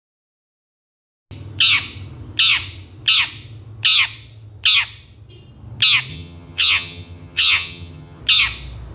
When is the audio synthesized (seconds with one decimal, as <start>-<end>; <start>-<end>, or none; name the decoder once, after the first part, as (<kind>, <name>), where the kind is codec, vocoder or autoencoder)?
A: 6.1-8.2 (vocoder, HiFi-GAN)